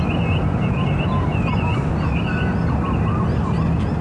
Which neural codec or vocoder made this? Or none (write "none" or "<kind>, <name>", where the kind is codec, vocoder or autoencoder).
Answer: none